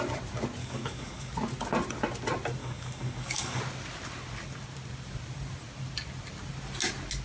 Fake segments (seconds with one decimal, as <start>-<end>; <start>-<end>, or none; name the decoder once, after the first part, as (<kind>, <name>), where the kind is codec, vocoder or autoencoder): 0.6-1.3 (codec, DAC); 2.6-3.6